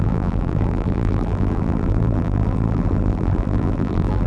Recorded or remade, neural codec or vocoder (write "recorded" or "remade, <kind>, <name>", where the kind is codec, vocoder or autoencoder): remade, vocoder, BigVGAN v2